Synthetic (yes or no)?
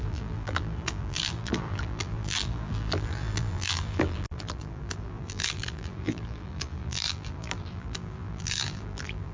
yes